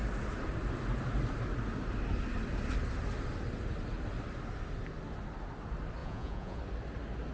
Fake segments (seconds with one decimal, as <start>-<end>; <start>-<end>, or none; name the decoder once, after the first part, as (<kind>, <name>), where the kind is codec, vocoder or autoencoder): 6.0-6.6 (vocoder, Vocos)